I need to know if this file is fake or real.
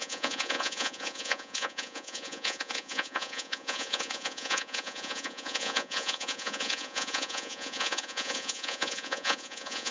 fake